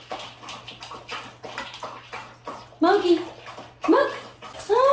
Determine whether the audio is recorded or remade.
recorded